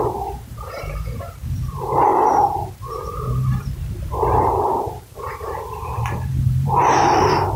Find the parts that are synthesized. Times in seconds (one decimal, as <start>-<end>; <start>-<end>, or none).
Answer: 0.0-7.6

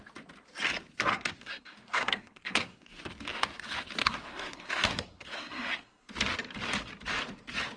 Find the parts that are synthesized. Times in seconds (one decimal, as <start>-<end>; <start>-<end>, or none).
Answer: 1.1-3.0; 4.0-6.1

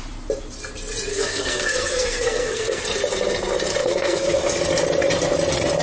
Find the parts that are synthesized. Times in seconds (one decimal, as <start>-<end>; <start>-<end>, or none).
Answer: 1.1-2.8; 3.8-4.4

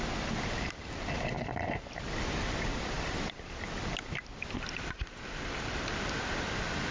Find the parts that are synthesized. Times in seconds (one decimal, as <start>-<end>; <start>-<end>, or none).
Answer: 2.7-3.7; 4.3-5.6

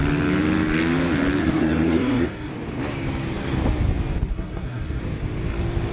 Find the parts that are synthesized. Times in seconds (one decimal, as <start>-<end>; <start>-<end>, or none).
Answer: 1.4-2.5; 4.3-5.0